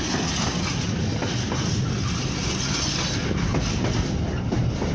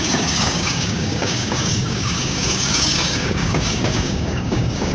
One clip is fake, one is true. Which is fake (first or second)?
second